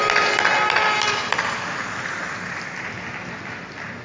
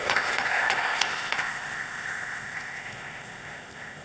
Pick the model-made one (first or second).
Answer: second